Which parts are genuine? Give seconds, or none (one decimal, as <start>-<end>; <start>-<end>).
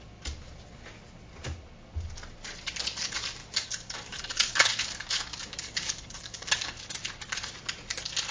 0.0-3.4; 6.8-8.3